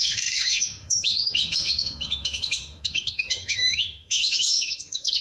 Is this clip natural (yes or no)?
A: no